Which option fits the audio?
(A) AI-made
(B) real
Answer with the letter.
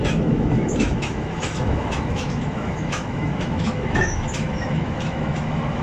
A